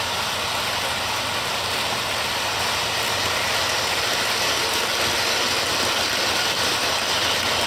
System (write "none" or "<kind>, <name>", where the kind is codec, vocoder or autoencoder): none